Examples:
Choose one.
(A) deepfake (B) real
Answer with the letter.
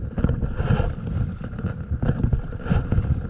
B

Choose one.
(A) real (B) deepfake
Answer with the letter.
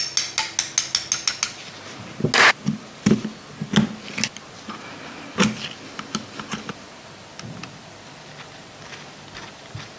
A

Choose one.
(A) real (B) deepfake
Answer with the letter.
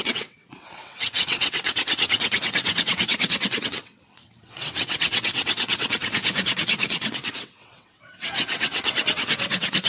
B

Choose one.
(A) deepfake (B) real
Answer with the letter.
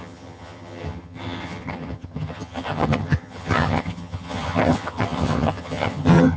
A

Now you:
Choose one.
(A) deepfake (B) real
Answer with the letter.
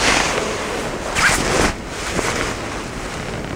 B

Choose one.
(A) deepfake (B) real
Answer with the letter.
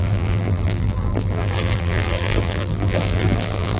A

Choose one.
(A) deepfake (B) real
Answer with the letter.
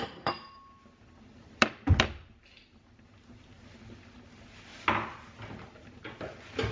B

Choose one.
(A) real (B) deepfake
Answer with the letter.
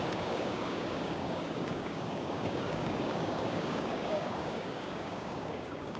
B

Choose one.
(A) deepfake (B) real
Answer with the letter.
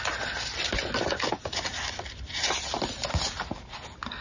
B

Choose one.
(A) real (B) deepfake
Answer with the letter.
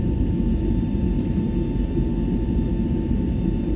A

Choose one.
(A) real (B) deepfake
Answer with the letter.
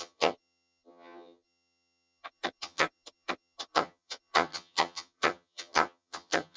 B